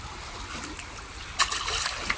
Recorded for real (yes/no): yes